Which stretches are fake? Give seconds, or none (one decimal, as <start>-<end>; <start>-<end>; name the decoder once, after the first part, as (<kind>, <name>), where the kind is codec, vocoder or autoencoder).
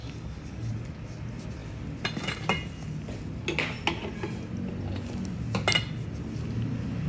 0.0-0.7 (codec, DAC)